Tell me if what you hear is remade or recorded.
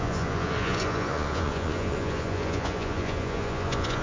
remade